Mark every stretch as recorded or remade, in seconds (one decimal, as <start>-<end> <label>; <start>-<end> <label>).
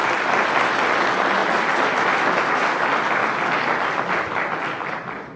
0.0-5.4 recorded